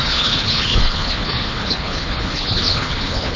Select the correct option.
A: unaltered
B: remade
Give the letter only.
B